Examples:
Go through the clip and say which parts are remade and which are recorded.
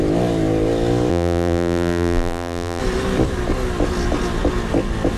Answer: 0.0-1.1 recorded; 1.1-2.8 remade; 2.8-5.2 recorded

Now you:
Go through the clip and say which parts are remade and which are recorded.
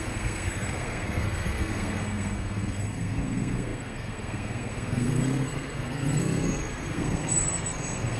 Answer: 0.0-8.2 remade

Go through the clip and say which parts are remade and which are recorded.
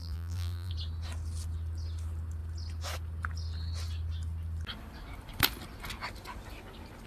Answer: 0.0-0.7 remade; 0.7-7.1 recorded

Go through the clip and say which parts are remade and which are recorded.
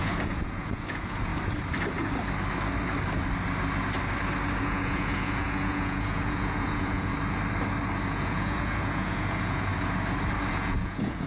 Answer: 0.0-1.3 remade; 1.3-4.6 recorded; 4.6-7.1 remade; 7.1-8.1 recorded; 8.1-9.7 remade; 9.7-10.5 recorded; 10.5-11.3 remade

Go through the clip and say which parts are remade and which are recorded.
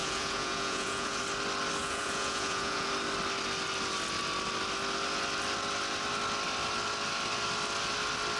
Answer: 0.0-1.2 remade; 1.2-1.8 recorded; 1.8-2.9 remade; 2.9-8.4 recorded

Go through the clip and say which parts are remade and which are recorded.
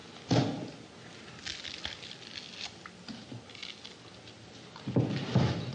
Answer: 0.0-5.7 recorded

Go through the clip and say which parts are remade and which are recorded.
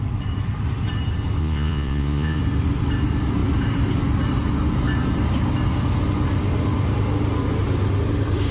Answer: 0.0-1.4 recorded; 1.4-2.4 remade; 2.4-8.5 recorded